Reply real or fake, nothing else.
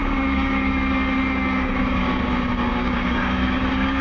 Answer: fake